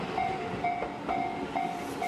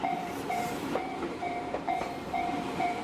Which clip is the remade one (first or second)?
second